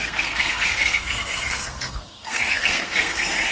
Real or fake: fake